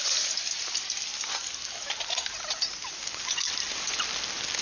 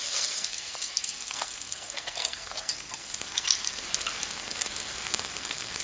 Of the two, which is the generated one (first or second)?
second